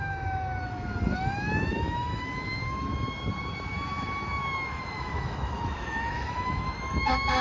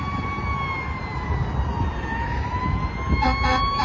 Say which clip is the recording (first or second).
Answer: second